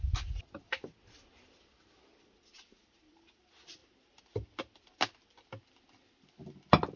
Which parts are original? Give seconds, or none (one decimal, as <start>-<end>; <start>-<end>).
0.0-7.0